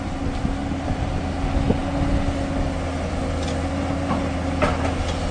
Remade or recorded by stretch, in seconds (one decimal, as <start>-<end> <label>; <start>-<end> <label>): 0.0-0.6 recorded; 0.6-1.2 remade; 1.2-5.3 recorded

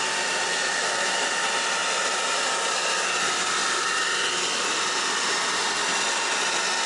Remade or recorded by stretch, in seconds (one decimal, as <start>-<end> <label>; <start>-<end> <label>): 0.0-6.9 recorded

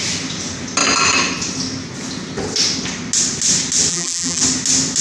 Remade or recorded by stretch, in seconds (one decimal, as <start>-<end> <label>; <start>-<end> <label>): 0.0-3.9 recorded; 3.9-4.4 remade; 4.4-5.0 recorded